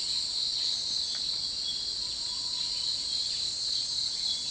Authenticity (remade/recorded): recorded